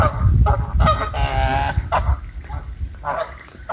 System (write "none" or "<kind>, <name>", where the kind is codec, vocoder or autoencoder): none